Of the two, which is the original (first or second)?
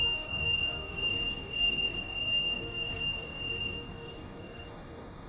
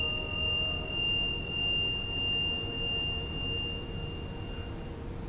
second